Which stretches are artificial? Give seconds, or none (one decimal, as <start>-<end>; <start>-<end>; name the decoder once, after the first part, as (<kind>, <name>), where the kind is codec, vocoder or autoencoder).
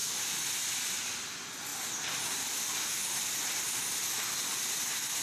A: 1.7-2.5 (vocoder, BigVGAN v2)